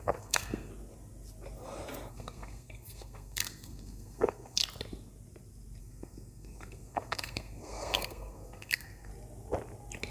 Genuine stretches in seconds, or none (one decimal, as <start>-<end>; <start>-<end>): 0.7-2.1; 4.6-5.8; 9.1-10.1